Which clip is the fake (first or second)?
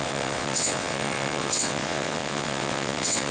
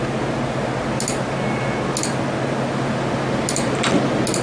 first